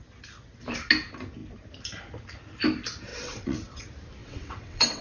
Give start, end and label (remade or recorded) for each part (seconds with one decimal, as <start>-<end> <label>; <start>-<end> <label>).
0.0-3.1 recorded; 3.1-3.8 remade; 3.8-4.2 recorded; 4.2-5.0 remade